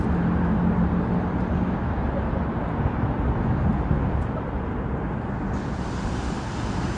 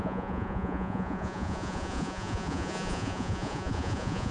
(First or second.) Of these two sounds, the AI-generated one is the second